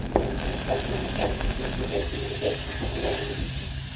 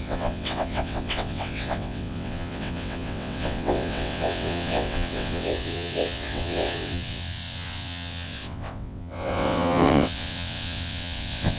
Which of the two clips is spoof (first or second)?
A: second